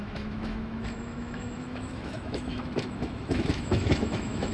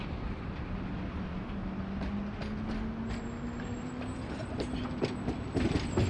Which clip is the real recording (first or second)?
second